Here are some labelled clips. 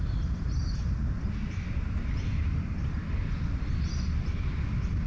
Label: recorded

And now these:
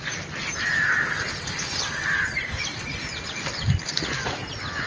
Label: recorded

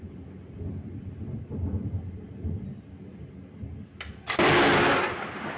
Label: recorded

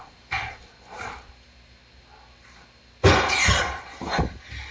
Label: recorded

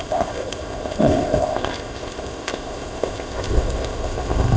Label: remade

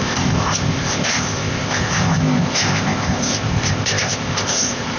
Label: remade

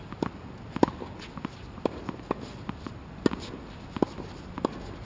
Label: recorded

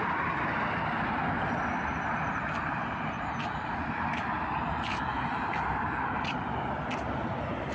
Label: recorded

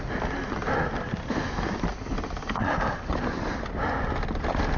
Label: recorded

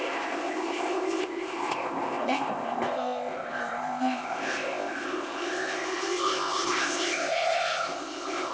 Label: remade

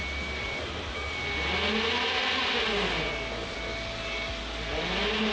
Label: recorded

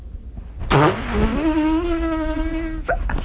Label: recorded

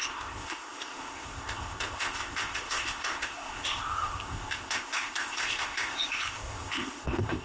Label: remade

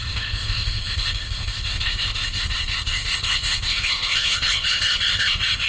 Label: remade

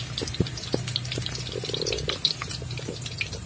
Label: recorded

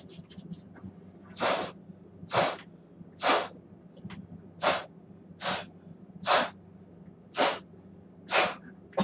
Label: recorded